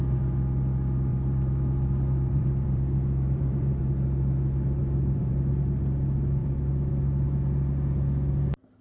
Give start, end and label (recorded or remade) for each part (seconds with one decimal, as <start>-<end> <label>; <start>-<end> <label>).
0.0-1.1 recorded; 1.1-3.8 remade; 3.8-4.8 recorded; 4.8-5.6 remade; 5.6-6.4 recorded; 6.4-6.9 remade; 6.9-8.8 recorded